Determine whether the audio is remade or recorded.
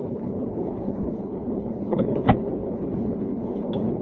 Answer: remade